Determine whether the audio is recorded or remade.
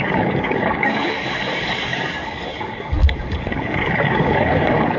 remade